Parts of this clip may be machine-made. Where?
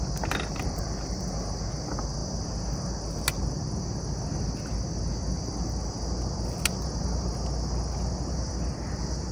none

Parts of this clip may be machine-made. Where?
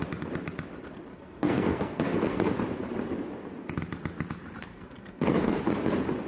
1.1-2.5 (codec, SNAC); 4.7-5.6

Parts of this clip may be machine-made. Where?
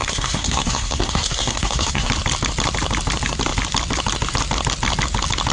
0.0-2.1 (codec, SNAC)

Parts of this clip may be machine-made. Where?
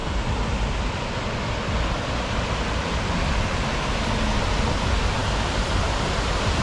none